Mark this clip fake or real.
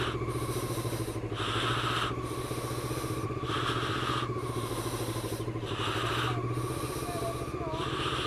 real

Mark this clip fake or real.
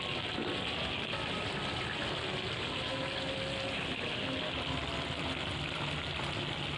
real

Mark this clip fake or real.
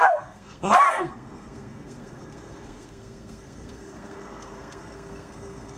fake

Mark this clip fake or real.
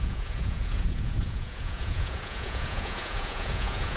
fake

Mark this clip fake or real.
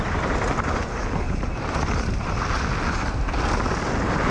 real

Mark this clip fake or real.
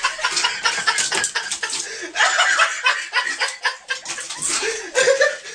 real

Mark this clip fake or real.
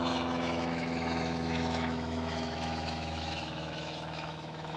fake